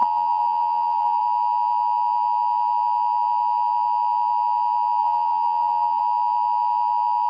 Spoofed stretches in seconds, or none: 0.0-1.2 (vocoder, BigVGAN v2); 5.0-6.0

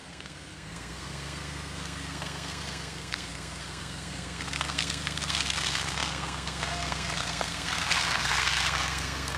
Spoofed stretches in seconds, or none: 0.0-9.4 (codec, SNAC)

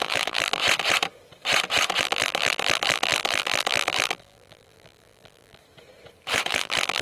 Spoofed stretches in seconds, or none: 0.0-0.6 (vocoder, BigVGAN v2); 2.0-5.6; 6.5-7.0

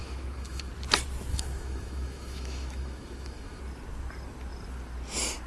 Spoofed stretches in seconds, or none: 0.0-0.7 (autoencoder, DAC-VAE); 1.3-3.6